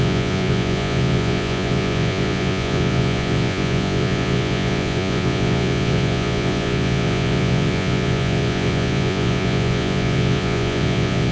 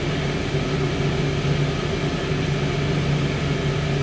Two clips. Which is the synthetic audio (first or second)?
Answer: first